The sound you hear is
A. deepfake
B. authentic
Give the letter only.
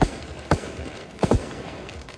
A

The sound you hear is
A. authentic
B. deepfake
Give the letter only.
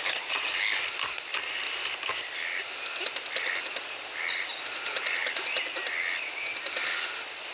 A